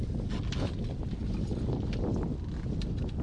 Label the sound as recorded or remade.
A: recorded